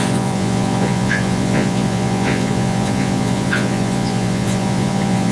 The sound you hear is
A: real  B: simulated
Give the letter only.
B